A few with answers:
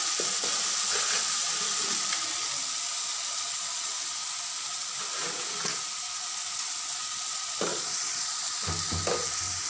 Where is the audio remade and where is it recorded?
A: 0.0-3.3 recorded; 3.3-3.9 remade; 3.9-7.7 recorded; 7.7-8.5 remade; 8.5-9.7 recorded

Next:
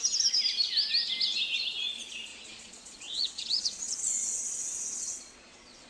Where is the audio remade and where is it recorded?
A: 0.0-2.3 recorded; 2.3-5.9 remade

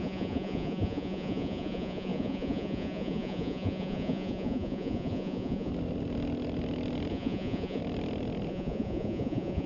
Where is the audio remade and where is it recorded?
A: 0.0-5.7 remade; 5.7-7.1 recorded; 7.1-7.8 remade; 7.8-8.5 recorded; 8.5-9.7 remade

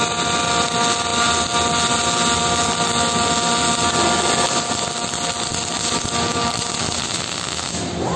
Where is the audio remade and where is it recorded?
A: 0.0-8.2 recorded

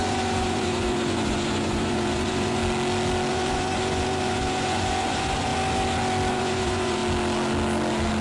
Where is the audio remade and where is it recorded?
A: 0.0-2.6 remade; 2.6-3.3 recorded; 3.3-5.5 remade; 5.5-6.3 recorded; 6.3-7.0 remade; 7.0-8.2 recorded